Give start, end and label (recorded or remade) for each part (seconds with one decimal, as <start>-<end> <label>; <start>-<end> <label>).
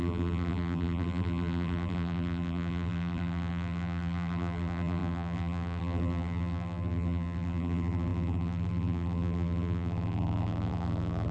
0.0-11.3 remade